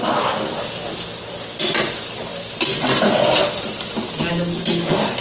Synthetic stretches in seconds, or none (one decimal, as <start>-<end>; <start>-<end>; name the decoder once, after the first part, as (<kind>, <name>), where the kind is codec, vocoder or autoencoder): none